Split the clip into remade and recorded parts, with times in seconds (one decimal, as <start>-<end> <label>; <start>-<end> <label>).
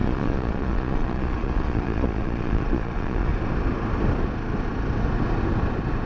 0.0-3.3 remade; 3.3-6.1 recorded